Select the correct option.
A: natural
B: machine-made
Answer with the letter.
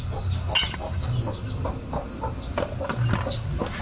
A